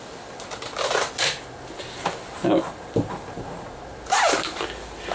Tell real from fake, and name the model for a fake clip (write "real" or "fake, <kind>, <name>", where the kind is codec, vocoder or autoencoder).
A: real